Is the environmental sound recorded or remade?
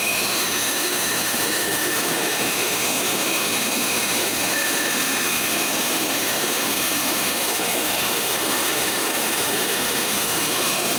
remade